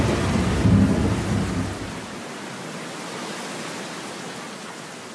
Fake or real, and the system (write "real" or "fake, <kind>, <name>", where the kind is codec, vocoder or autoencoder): real